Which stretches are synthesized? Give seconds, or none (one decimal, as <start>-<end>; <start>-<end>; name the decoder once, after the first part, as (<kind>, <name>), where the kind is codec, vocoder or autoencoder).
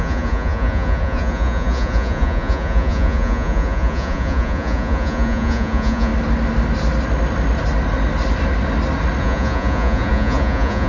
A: 0.0-6.1 (vocoder, Vocos); 9.2-10.9